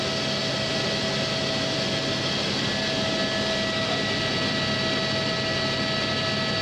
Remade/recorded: recorded